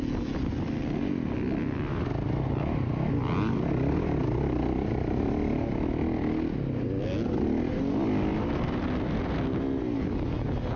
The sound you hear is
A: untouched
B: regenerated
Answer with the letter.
A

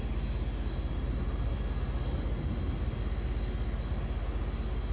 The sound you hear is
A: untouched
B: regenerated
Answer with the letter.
A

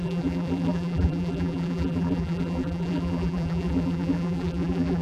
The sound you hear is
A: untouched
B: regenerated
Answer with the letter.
B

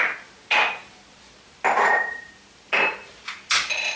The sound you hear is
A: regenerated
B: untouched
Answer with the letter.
B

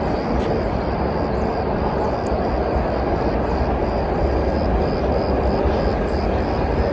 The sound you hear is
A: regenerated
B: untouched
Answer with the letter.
B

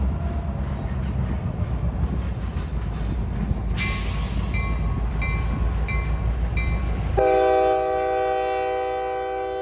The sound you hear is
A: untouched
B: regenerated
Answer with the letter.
A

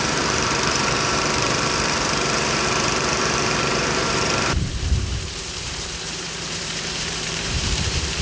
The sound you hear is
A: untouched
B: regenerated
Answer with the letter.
B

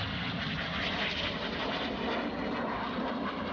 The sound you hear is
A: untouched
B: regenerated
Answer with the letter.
A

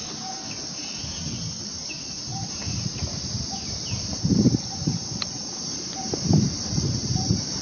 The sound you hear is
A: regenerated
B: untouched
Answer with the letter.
A